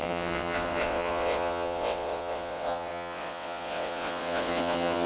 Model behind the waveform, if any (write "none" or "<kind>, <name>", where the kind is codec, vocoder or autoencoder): vocoder, WaveNeXt